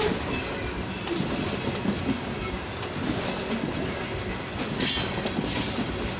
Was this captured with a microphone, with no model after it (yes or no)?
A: yes